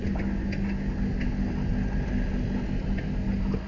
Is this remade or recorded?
recorded